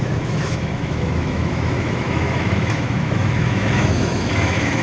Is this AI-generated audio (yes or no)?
yes